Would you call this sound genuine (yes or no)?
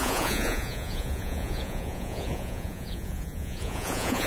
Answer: no